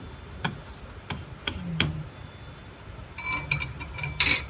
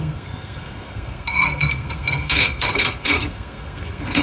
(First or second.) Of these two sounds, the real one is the first